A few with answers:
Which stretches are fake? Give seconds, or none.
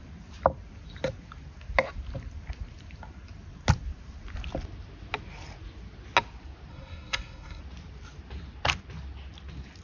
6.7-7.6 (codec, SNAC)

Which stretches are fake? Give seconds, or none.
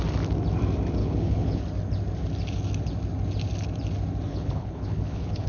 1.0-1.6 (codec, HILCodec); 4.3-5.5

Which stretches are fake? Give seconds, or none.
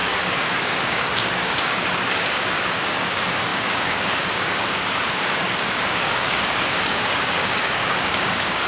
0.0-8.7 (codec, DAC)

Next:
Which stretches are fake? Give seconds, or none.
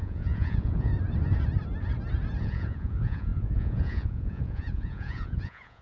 0.0-0.9 (vocoder, Vocos); 2.4-5.8